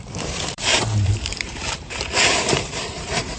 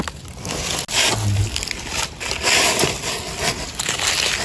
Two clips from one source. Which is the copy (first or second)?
first